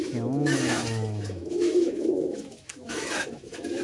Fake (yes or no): yes